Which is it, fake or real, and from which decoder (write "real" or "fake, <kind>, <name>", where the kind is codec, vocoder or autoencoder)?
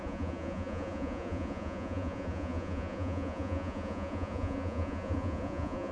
fake, vocoder, Vocos